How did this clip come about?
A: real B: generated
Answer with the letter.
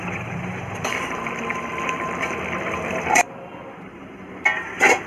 B